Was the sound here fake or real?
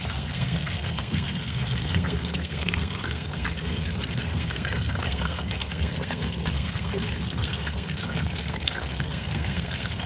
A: fake